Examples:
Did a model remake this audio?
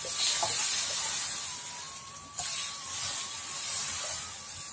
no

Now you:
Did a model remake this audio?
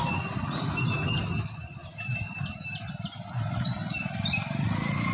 no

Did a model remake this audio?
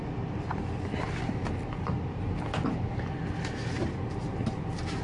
no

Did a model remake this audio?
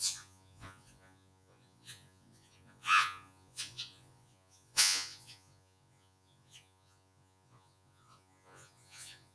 yes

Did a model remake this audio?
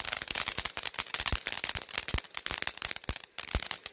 no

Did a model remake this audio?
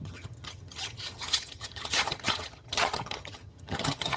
yes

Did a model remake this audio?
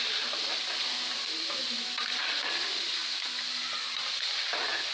no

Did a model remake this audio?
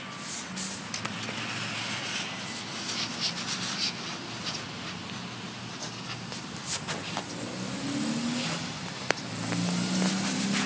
no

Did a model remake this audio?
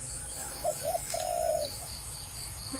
yes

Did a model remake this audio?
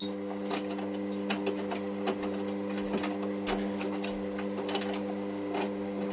no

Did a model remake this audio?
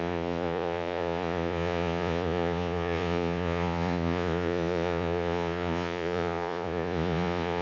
yes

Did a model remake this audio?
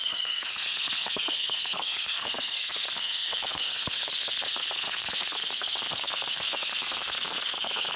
yes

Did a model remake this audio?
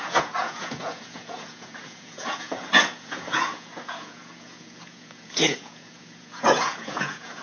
yes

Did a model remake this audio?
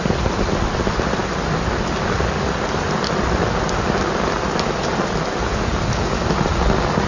no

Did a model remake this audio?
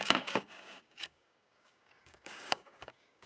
yes